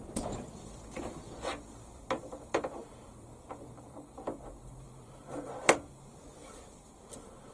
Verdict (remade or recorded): remade